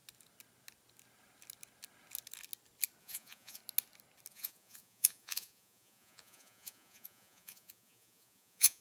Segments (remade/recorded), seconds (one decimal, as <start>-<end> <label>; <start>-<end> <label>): 0.0-3.0 recorded; 3.0-3.6 remade; 3.6-4.3 recorded; 4.3-8.8 remade